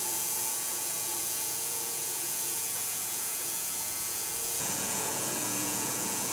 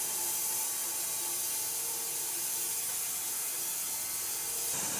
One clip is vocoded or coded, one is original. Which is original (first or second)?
second